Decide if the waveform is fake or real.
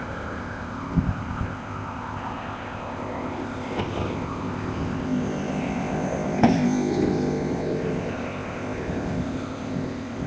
fake